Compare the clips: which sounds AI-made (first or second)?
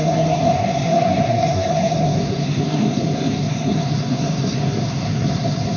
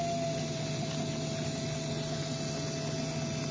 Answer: first